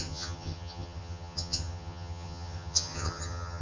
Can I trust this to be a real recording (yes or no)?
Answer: no